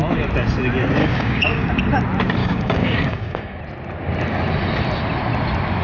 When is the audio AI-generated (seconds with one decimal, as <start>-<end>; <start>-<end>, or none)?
1.0-1.7; 2.4-3.6